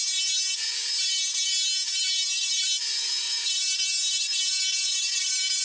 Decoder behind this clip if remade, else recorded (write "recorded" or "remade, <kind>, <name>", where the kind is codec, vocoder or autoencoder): recorded